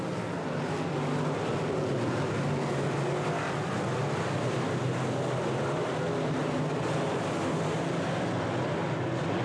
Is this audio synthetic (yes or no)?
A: no